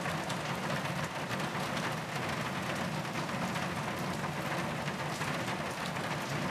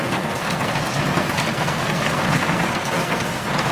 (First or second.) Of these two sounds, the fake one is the second